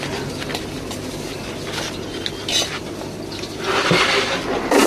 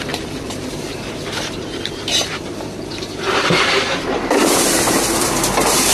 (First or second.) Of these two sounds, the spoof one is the second